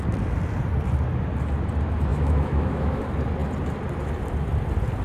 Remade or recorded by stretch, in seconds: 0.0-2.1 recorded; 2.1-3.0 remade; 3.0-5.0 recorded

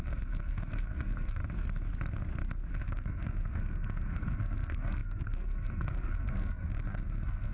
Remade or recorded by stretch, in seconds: 0.0-1.4 remade; 1.4-2.7 recorded; 2.7-7.5 remade

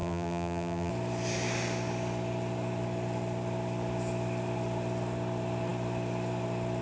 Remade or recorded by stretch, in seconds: 0.0-0.9 remade; 0.9-6.8 recorded

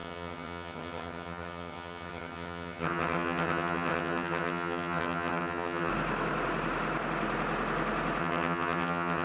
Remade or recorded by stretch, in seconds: 0.0-5.9 remade; 5.9-8.2 recorded; 8.2-9.2 remade